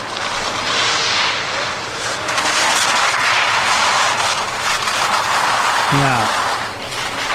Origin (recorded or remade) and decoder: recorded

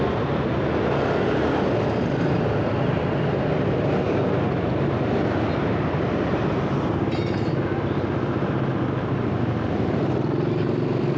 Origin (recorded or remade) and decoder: recorded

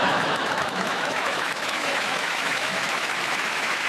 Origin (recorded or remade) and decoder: remade, autoencoder, DAC-VAE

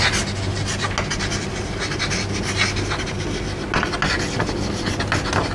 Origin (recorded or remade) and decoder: recorded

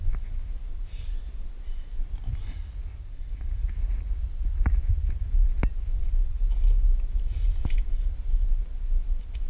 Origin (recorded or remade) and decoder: recorded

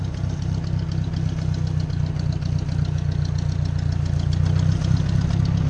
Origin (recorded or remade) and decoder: recorded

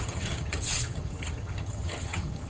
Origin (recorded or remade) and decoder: remade, vocoder, HiFi-GAN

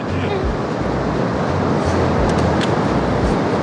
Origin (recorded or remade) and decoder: recorded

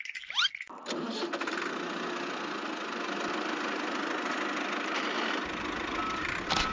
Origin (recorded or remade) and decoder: recorded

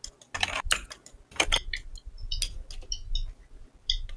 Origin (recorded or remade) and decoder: recorded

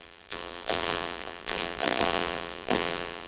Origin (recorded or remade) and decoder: remade, vocoder, BigVGAN v2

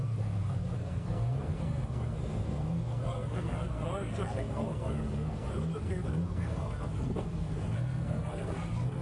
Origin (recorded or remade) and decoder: remade, codec, SNAC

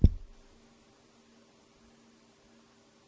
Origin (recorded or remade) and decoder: recorded